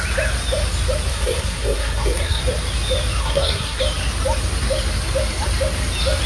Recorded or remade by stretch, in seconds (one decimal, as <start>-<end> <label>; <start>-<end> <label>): 0.0-1.1 recorded; 1.1-2.4 remade; 2.4-3.2 recorded; 3.2-3.8 remade; 3.8-6.3 recorded